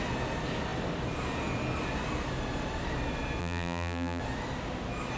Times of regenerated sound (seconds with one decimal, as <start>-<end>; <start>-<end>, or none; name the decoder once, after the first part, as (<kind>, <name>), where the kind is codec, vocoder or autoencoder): 3.4-4.2 (vocoder, BigVGAN v2)